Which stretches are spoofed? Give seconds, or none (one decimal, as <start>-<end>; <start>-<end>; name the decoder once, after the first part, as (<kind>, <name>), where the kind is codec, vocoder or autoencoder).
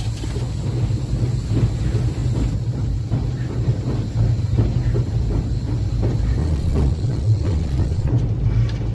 6.4-8.1 (vocoder, Vocos)